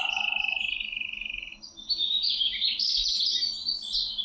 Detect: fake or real real